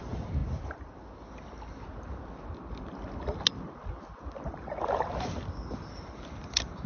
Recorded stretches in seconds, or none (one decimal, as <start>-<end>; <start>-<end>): 0.0-6.9